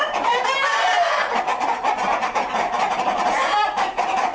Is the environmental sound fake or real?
fake